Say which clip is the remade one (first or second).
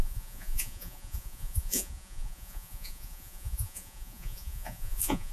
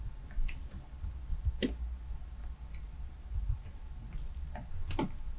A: first